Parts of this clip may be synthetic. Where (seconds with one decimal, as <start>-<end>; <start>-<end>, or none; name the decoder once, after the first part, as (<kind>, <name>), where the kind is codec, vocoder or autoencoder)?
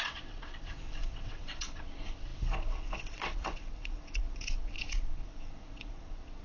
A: 0.0-6.4 (vocoder, WaveNeXt)